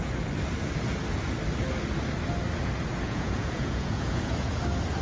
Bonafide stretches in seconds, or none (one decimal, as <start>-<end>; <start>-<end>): 0.0-2.9; 4.5-5.0